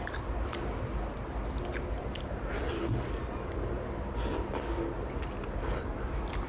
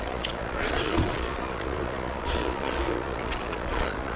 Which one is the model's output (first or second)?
second